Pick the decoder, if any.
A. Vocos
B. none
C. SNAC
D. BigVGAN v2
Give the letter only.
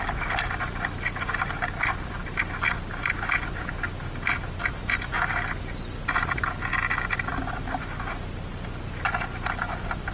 B